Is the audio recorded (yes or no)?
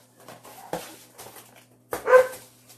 yes